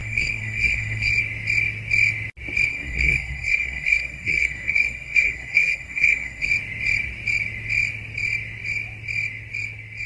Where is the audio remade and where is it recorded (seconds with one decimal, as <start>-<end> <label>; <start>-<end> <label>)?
0.0-1.1 remade; 1.1-2.7 recorded; 2.7-6.5 remade; 6.5-10.1 recorded